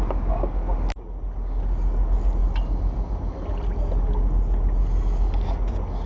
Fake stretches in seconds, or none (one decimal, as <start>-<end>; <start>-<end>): none